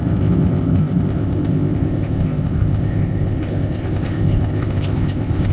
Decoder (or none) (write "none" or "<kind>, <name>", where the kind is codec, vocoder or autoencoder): codec, ZipCodec